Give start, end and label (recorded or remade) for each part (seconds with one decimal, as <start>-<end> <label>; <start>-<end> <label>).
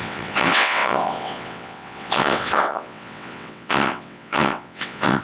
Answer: 0.0-5.2 remade